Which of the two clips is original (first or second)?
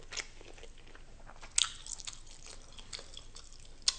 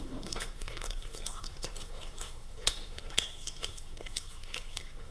first